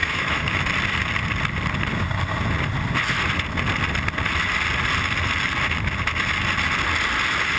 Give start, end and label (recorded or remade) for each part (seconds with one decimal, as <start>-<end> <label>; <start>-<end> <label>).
0.0-0.6 remade; 0.6-7.6 recorded